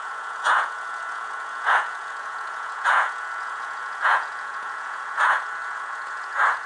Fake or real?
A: fake